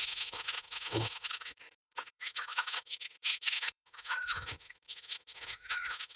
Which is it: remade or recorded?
remade